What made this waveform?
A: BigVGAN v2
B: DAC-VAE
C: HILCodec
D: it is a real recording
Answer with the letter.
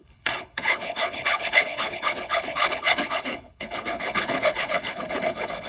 C